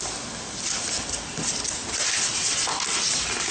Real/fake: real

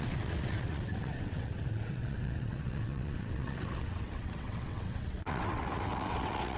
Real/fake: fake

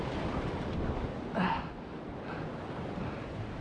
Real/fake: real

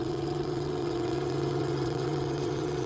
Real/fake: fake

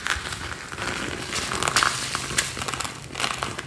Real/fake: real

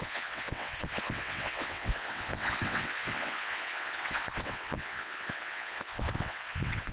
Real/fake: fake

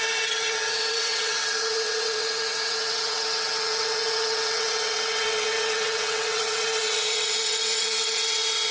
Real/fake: fake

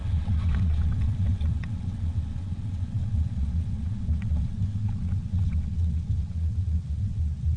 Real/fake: fake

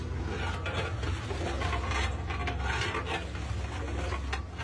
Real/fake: real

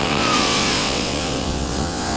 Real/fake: fake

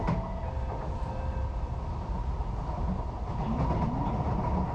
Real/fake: real